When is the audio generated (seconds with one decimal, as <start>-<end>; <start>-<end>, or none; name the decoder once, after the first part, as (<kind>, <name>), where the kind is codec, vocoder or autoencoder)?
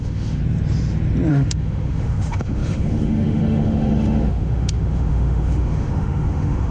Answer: 0.0-0.4 (autoencoder, DAC-VAE); 1.3-6.7